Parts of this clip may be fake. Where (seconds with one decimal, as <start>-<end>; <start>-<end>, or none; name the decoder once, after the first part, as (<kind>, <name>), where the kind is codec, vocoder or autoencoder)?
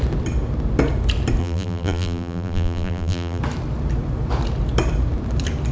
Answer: 1.4-3.4 (vocoder, BigVGAN v2)